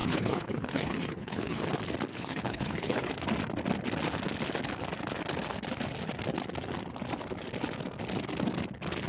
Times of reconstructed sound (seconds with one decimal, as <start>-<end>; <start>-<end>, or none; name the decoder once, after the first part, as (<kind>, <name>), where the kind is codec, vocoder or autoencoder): 0.0-1.6 (codec, HILCodec); 2.1-3.1